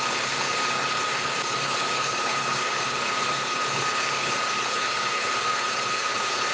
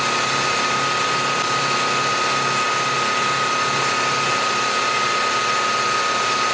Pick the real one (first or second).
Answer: second